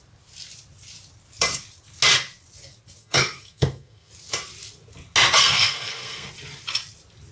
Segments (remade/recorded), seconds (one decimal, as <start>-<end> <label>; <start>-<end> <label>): 0.0-3.0 recorded; 3.0-4.1 remade; 4.1-5.4 recorded; 5.4-6.3 remade; 6.3-7.3 recorded